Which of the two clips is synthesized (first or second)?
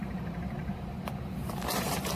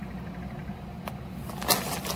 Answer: first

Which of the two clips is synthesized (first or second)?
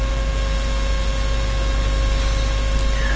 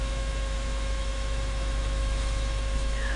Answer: second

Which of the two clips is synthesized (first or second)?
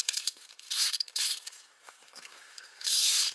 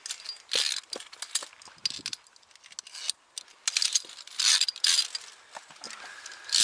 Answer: first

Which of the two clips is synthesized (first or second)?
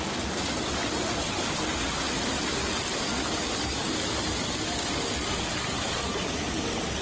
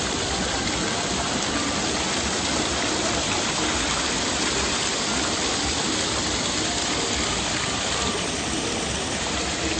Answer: second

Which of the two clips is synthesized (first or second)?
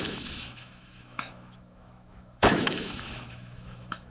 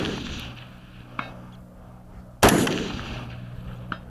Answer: first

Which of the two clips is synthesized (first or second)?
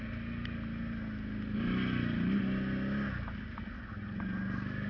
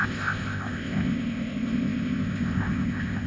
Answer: second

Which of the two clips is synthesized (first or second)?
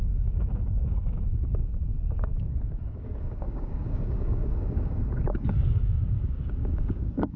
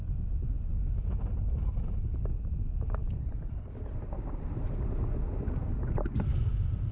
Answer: first